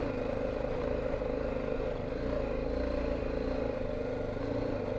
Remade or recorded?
recorded